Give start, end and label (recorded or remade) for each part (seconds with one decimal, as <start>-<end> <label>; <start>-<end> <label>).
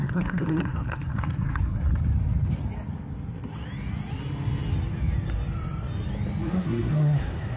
0.0-1.9 remade; 1.9-6.5 recorded; 6.5-7.6 remade